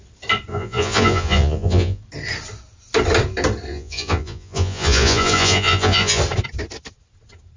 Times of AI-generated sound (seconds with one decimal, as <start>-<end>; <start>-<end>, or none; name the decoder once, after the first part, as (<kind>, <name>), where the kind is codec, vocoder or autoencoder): 0.5-2.0 (vocoder, Vocos); 3.7-6.2